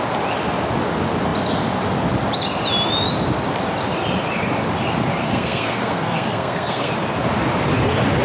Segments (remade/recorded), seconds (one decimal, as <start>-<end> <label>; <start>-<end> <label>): 0.0-5.2 recorded; 5.2-6.9 remade; 6.9-8.2 recorded

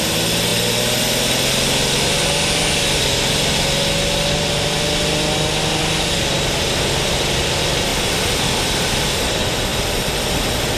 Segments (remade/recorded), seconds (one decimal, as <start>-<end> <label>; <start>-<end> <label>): 0.0-7.9 recorded; 7.9-8.4 remade; 8.4-9.7 recorded; 9.7-10.4 remade; 10.4-10.8 recorded

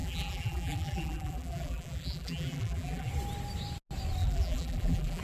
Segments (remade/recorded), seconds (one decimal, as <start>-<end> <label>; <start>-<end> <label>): 0.0-3.1 remade; 3.1-4.2 recorded; 4.2-5.2 remade

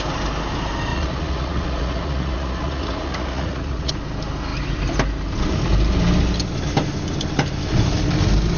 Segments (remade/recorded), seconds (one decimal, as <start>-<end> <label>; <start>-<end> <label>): 0.0-0.9 recorded; 0.9-3.9 remade; 3.9-8.6 recorded